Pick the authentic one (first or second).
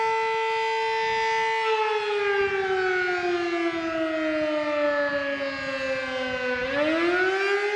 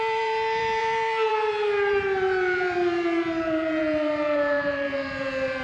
first